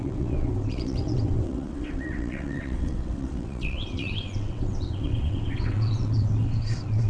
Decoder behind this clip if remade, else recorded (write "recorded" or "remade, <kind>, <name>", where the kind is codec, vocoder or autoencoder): remade, vocoder, WaveNeXt